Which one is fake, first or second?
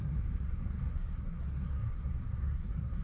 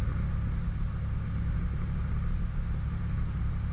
first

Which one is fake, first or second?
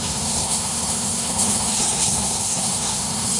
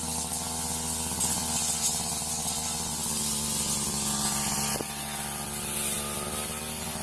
first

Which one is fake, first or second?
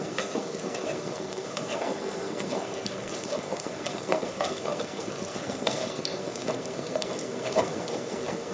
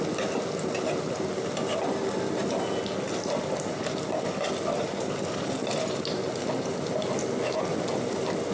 first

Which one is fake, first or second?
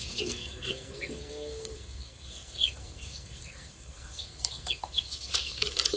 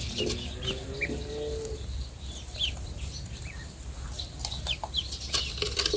first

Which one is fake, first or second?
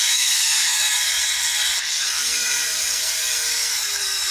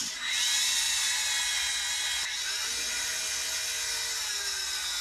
first